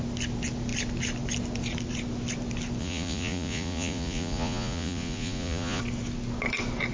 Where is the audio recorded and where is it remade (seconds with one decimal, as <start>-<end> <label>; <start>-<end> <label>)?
0.0-2.8 recorded; 2.8-5.8 remade; 5.8-6.9 recorded